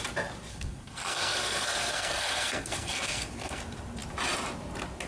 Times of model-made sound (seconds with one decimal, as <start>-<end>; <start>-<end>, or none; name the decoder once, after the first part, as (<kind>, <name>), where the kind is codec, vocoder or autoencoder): 0.5-3.6 (codec, SNAC)